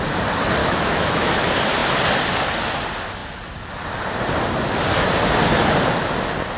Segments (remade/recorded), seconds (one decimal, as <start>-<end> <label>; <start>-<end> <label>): 0.0-0.6 recorded; 0.6-1.3 remade; 1.3-6.6 recorded